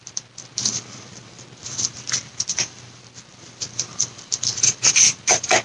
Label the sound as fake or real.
fake